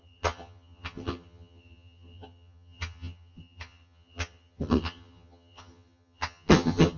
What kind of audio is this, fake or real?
fake